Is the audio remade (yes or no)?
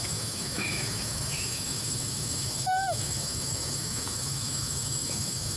yes